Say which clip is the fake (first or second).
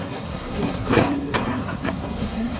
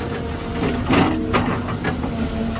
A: first